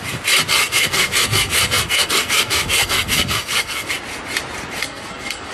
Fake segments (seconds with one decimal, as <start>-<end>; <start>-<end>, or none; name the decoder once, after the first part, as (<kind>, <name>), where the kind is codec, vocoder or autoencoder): 0.6-3.9 (codec, SNAC); 4.8-5.5